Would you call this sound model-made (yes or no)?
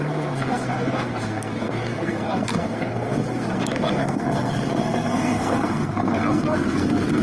yes